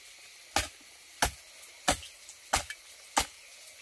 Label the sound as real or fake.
real